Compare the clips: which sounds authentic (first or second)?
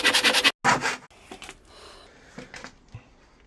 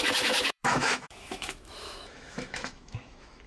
first